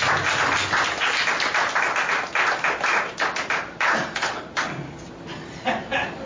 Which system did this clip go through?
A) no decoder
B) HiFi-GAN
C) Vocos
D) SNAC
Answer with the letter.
A